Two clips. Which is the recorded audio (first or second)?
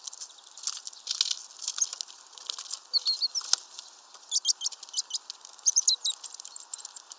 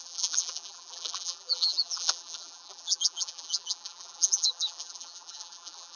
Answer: first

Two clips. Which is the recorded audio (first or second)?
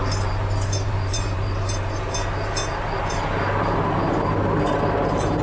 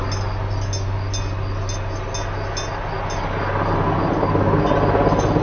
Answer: second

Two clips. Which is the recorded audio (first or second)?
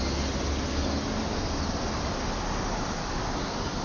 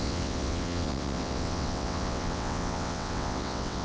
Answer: first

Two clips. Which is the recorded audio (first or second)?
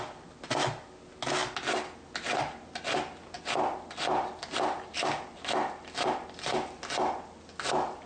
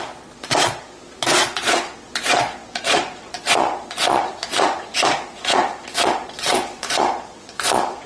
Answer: first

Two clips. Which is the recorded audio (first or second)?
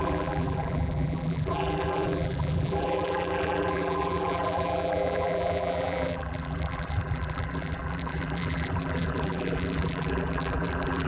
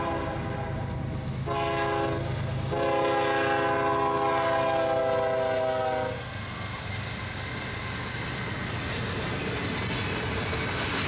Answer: second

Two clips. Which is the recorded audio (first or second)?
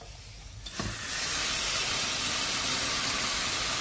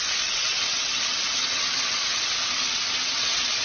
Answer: first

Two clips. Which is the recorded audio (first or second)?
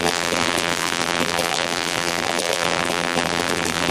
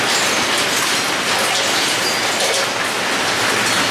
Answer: second